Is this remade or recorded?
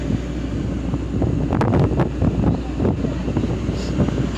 recorded